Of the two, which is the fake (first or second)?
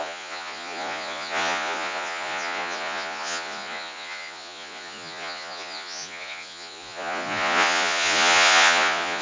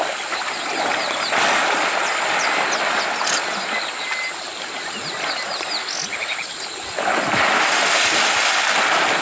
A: first